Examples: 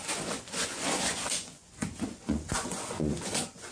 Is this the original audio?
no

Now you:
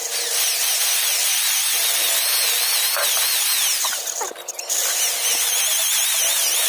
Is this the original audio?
yes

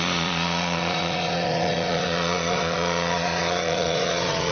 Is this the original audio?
no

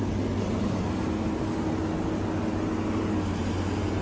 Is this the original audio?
yes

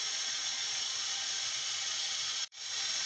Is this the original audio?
no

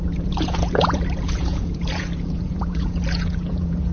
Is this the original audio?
no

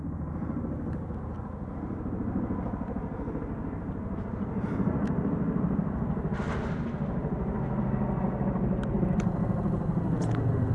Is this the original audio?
yes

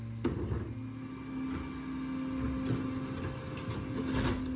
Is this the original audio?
yes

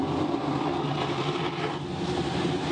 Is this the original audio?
yes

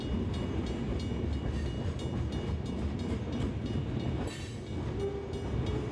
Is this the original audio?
yes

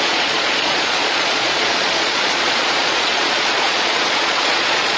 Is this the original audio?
no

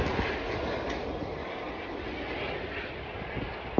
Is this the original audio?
yes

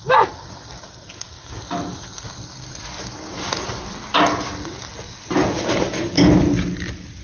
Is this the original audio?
yes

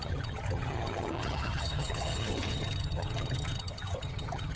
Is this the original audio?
no